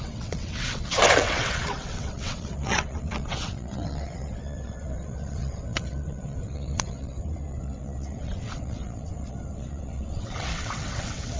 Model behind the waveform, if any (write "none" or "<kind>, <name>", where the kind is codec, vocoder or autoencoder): vocoder, WaveNeXt